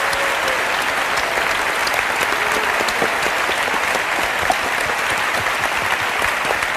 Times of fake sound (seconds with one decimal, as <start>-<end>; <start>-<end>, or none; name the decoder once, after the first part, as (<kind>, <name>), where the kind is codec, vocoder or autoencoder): none